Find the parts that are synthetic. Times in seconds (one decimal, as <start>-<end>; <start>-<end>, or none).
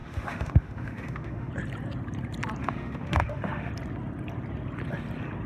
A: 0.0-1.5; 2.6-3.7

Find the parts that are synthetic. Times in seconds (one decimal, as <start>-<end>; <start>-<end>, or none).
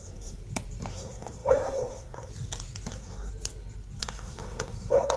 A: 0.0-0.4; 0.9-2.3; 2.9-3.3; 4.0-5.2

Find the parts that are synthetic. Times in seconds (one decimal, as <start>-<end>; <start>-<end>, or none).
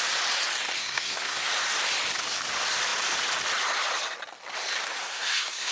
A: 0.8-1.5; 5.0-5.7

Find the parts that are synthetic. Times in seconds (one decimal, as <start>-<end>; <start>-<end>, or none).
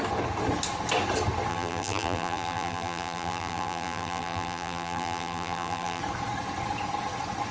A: 1.5-6.0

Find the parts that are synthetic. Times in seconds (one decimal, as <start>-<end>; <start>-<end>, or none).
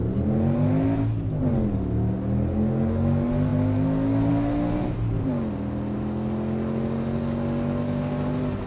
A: none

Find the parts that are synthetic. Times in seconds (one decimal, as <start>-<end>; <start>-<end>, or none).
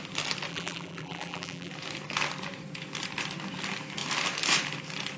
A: 0.5-1.7